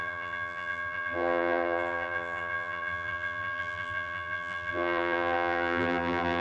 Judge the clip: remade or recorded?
remade